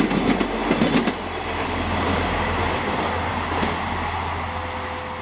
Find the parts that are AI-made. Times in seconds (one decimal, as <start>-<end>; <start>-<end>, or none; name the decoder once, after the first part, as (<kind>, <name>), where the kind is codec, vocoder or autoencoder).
none